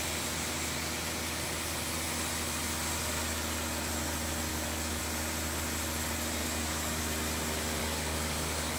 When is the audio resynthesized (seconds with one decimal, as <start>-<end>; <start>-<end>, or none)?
4.5-5.0; 6.4-7.0; 7.8-8.8